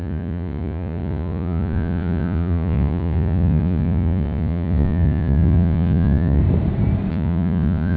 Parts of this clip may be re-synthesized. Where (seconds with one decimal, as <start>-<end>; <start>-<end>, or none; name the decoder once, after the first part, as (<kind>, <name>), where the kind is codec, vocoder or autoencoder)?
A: 0.0-6.4 (vocoder, Vocos); 7.1-8.0